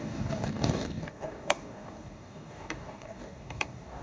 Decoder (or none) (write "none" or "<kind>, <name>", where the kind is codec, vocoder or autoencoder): codec, DAC